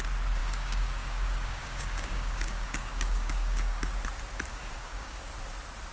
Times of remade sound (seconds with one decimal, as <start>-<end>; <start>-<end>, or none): 0.4-3.9; 4.5-5.3